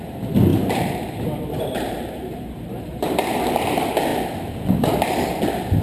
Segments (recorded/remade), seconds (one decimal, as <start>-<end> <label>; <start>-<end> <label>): 0.0-0.5 recorded; 0.5-3.4 remade; 3.4-5.8 recorded